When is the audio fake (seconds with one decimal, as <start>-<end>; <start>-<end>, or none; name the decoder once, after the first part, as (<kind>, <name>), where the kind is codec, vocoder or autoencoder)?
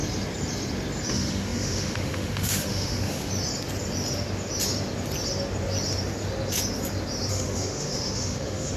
1.1-3.3 (autoencoder, DAC-VAE); 7.3-8.8